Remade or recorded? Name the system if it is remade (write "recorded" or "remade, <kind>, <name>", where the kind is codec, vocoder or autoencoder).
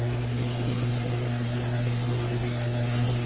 remade, codec, SNAC